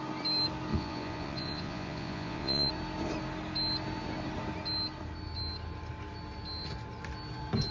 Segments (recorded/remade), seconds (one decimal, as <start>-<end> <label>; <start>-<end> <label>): 0.0-0.7 recorded; 0.7-2.7 remade; 2.7-7.7 recorded